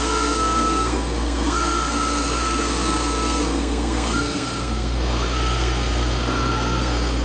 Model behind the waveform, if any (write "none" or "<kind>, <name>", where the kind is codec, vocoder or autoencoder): codec, SNAC